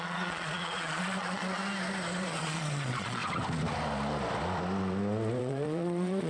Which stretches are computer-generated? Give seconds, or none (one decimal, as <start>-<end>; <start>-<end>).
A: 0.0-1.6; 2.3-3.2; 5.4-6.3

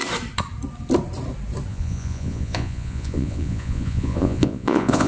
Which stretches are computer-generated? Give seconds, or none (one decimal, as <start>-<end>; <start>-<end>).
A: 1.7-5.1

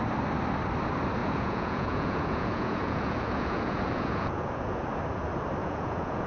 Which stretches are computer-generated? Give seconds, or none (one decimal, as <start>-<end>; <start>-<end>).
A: 1.2-5.0; 5.6-6.3